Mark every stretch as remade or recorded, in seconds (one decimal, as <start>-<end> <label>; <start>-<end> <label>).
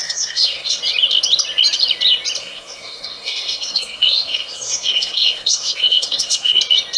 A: 0.0-0.8 remade; 0.8-2.4 recorded; 2.4-6.6 remade; 6.6-7.0 recorded